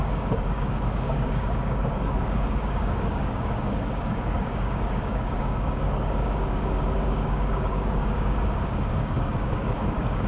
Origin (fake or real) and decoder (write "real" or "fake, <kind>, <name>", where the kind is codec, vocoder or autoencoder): fake, codec, DAC